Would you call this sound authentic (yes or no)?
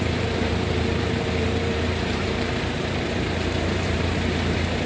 no